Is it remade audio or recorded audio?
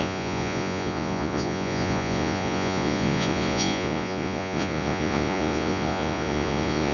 remade